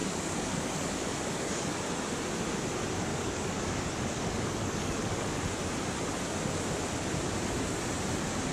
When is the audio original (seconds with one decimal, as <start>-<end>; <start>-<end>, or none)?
1.5-3.1; 5.4-8.5